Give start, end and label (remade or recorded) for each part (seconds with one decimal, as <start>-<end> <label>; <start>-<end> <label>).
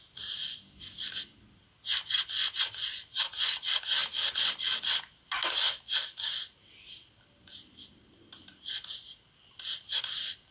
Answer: 0.0-10.5 recorded